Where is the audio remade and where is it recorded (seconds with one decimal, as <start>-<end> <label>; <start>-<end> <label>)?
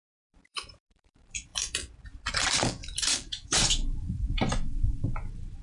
0.0-5.6 remade